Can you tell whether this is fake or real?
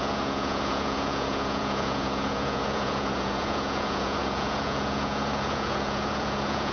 fake